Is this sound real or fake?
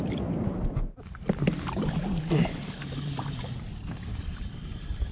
real